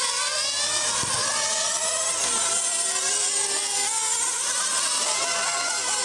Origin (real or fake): real